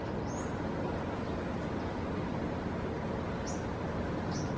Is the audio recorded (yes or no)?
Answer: yes